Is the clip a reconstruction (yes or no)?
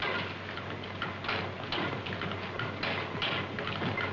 no